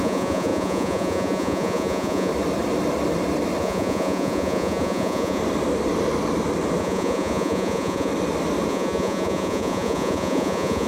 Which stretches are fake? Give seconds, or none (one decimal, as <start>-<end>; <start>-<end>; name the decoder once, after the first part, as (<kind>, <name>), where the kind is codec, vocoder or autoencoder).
0.0-2.3 (vocoder, Vocos); 3.6-5.4; 6.8-8.1; 8.7-10.9